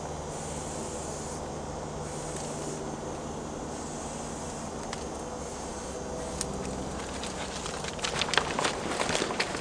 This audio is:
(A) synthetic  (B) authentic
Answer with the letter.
B